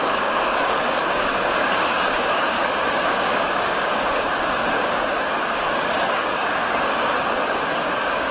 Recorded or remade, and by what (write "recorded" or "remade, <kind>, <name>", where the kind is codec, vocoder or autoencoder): remade, codec, DAC